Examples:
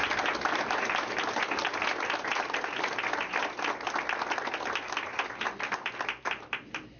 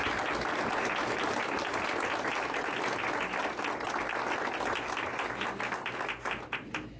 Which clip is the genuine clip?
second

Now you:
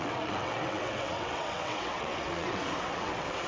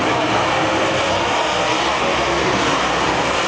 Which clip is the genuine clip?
second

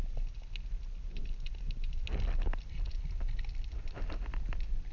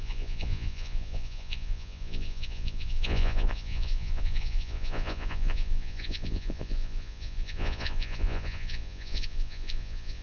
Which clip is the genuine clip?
first